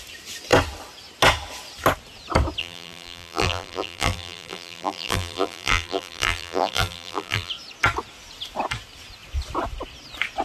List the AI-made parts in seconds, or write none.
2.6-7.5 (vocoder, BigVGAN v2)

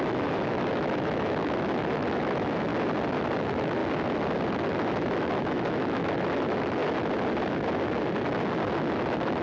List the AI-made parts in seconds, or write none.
0.0-2.7 (autoencoder, DAC-VAE); 3.2-3.8; 4.5-6.8; 8.9-9.4

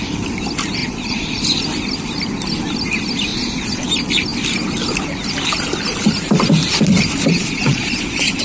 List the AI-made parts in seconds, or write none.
0.8-1.4 (vocoder, Vocos); 3.3-3.9; 7.3-8.4

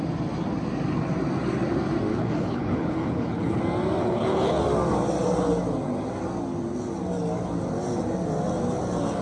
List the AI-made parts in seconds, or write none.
2.1-3.6 (codec, HILCodec); 4.0-4.6